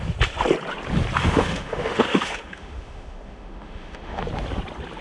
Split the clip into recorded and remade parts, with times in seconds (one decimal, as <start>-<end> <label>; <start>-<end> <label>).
0.0-1.2 recorded; 1.2-4.2 remade; 4.2-5.0 recorded